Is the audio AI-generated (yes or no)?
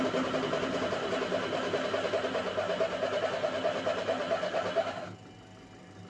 no